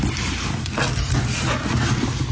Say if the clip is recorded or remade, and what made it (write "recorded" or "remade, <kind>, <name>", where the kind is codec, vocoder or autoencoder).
recorded